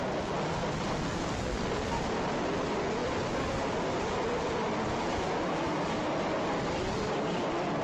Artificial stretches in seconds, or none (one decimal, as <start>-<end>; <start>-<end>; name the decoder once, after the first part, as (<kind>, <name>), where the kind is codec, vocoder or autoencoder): 3.0-4.1 (vocoder, BigVGAN v2)